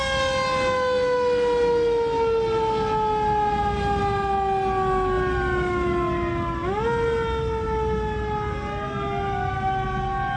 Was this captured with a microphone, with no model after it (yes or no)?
yes